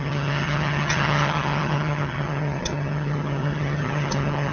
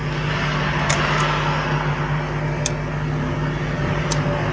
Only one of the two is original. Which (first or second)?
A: second